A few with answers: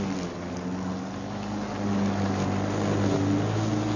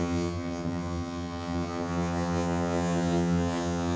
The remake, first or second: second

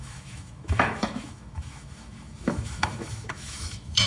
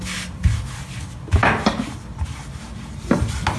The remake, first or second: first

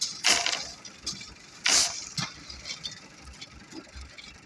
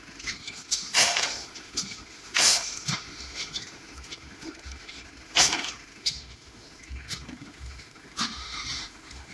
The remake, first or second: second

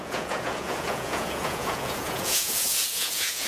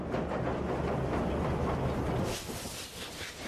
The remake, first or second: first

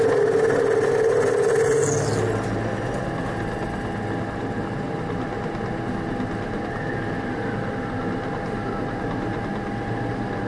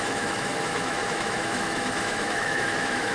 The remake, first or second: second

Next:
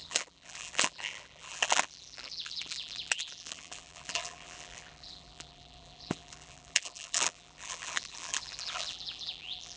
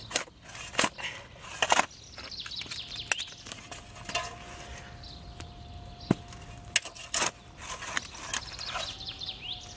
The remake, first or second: first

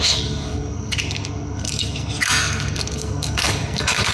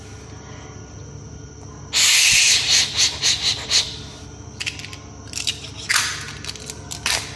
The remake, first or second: first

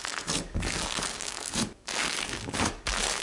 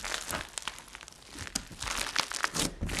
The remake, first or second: first